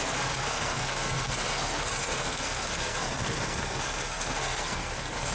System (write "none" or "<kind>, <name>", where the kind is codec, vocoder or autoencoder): codec, SNAC